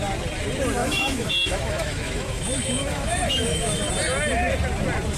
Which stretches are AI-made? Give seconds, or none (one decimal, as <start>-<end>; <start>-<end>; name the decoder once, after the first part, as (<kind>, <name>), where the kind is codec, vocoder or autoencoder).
0.8-3.9 (autoencoder, DAC-VAE)